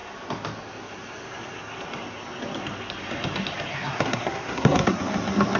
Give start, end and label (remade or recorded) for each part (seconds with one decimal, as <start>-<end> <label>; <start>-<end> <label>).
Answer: 0.0-3.7 recorded; 3.7-5.0 remade; 5.0-5.6 recorded